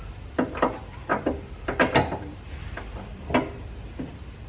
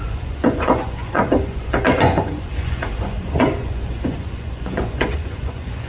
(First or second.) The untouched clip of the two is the first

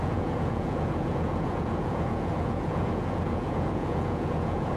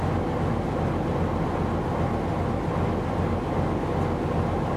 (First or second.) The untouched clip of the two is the second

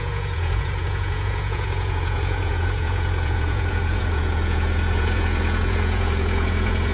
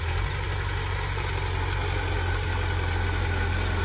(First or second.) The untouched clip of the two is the second